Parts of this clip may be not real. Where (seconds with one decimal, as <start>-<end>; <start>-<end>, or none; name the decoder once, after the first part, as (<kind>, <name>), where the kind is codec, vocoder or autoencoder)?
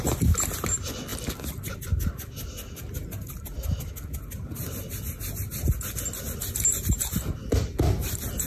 none